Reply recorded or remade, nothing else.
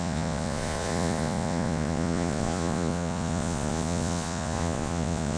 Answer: remade